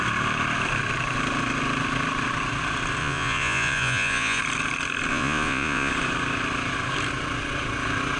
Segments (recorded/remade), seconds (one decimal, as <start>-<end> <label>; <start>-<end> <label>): 0.0-3.0 recorded; 3.0-4.4 remade; 4.4-5.1 recorded; 5.1-5.9 remade; 5.9-8.2 recorded